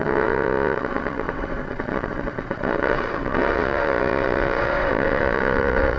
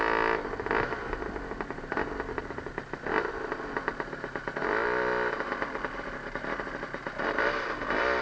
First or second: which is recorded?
second